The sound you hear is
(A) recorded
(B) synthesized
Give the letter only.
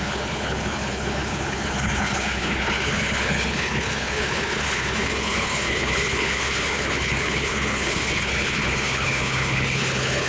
B